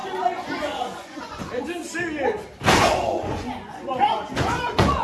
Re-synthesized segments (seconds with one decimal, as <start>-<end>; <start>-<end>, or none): 0.0-1.8; 2.8-5.0

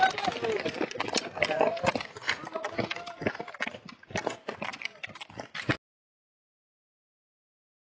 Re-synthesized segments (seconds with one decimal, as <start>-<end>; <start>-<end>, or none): 1.7-2.9; 4.7-5.7

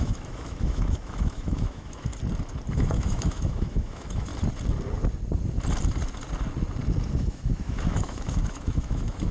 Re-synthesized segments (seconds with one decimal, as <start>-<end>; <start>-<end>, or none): 0.0-2.1; 2.7-4.3; 7.1-9.3

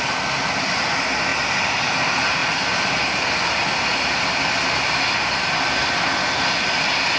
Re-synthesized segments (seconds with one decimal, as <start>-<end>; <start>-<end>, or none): none

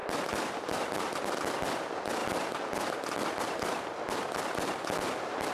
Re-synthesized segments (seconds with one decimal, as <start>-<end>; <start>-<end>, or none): none